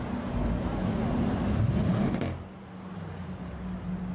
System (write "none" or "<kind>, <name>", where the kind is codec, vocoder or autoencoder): none